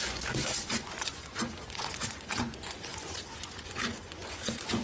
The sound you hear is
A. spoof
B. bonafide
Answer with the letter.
A